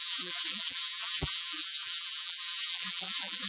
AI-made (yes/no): yes